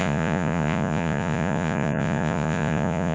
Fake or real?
fake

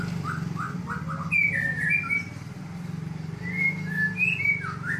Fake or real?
real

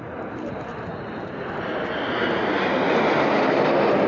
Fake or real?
real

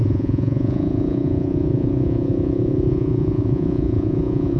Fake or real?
fake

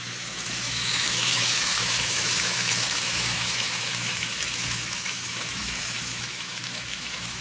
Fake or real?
fake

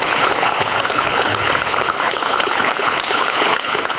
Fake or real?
fake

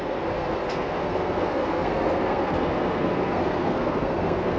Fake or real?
fake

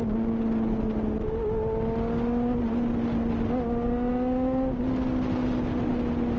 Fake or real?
real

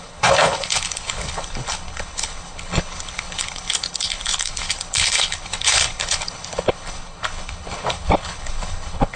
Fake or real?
fake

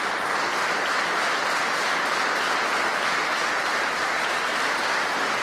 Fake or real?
real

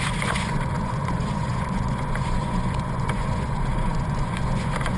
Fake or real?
fake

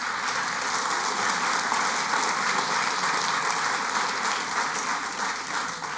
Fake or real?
real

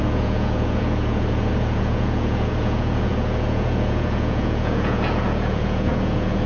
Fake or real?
fake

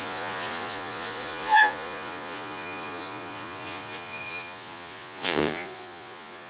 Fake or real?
fake